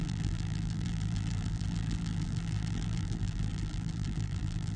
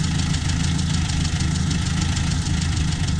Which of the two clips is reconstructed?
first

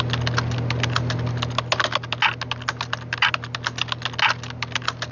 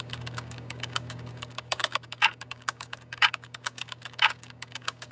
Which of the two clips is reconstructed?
second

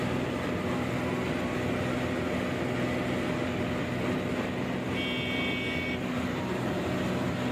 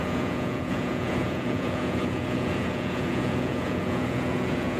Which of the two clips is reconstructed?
second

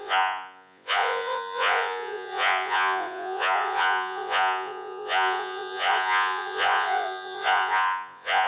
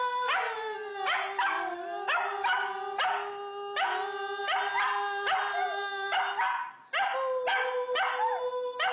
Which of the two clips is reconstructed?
first